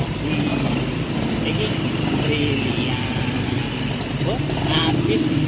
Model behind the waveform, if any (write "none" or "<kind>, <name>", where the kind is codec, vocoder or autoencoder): none